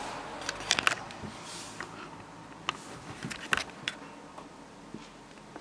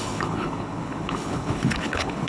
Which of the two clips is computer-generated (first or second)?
second